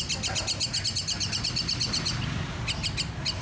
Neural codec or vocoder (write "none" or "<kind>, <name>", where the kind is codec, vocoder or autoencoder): none